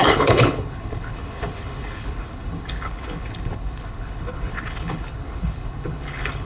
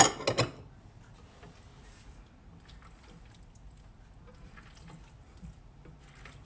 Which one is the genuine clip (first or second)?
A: second